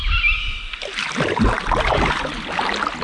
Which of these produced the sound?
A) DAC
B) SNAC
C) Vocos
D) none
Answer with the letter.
D